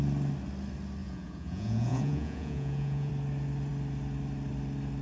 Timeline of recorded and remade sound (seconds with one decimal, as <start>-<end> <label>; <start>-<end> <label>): 0.0-1.0 recorded; 1.0-3.1 remade; 3.1-5.0 recorded